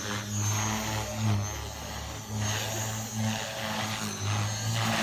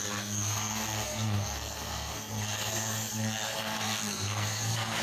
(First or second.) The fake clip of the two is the second